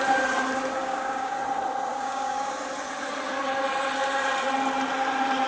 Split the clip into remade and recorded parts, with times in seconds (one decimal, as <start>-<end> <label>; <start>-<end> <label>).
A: 0.0-0.8 recorded; 0.8-1.3 remade; 1.3-1.9 recorded; 1.9-2.5 remade; 2.5-5.5 recorded